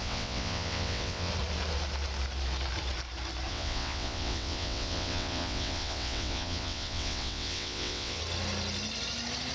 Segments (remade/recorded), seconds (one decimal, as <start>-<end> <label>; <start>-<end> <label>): 0.0-1.3 remade; 1.3-3.5 recorded; 3.5-8.2 remade; 8.2-9.5 recorded